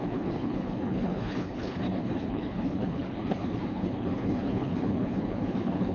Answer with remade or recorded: remade